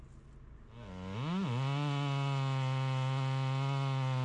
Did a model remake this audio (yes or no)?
no